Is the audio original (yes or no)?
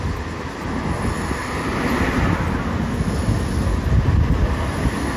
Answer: yes